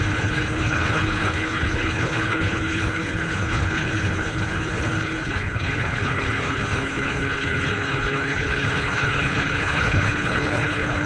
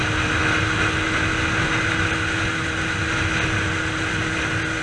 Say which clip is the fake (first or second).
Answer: first